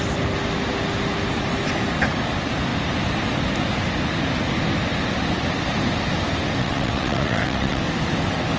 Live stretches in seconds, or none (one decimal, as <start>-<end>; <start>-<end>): 0.0-6.6; 7.8-8.6